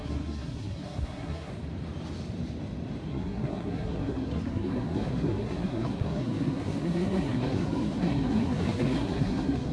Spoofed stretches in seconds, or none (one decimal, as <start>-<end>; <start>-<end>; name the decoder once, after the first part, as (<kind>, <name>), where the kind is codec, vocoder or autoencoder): 0.0-1.5 (codec, SNAC); 3.1-9.7